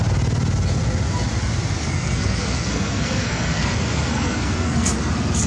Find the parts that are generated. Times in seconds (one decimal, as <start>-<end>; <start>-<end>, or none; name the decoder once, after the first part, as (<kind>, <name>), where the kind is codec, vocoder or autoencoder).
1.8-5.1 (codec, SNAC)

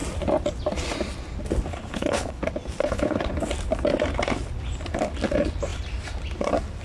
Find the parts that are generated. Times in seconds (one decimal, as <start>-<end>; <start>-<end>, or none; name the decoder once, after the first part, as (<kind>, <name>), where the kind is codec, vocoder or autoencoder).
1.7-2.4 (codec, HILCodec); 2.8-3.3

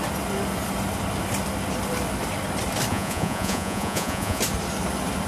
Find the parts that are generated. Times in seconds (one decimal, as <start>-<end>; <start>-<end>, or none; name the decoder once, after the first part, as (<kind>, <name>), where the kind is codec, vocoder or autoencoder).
2.9-4.4 (vocoder, Vocos)

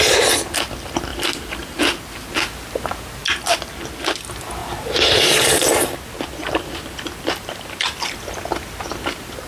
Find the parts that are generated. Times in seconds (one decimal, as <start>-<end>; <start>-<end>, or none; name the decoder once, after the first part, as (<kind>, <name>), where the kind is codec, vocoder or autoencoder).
1.1-1.8 (vocoder, BigVGAN v2); 4.6-8.4

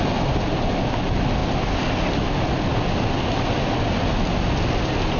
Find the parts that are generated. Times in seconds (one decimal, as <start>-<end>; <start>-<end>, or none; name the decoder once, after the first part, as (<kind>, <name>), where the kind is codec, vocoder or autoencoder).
none

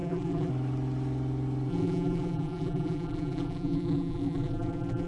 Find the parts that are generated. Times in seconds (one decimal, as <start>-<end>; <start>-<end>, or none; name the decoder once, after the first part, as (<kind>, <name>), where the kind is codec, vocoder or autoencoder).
0.0-0.5 (vocoder, BigVGAN v2); 1.7-5.1